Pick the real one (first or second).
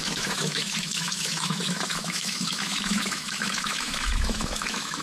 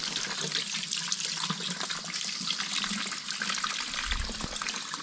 second